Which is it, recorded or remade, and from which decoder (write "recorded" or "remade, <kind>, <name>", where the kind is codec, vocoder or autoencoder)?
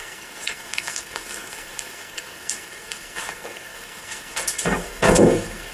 remade, codec, SNAC